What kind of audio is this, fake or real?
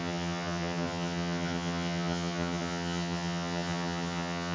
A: fake